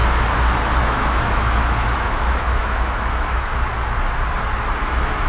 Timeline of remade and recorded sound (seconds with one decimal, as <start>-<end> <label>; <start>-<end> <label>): 0.0-0.8 recorded; 0.8-3.5 remade; 3.5-4.8 recorded; 4.8-5.3 remade